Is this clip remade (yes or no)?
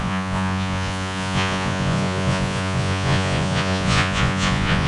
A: yes